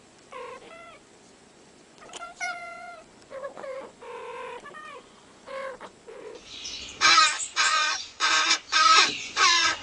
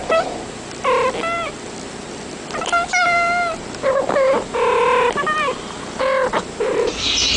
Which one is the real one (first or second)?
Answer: second